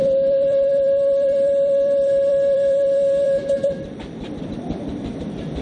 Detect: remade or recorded remade